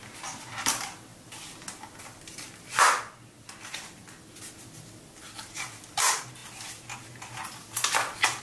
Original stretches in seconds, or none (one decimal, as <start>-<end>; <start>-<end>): 0.0-8.4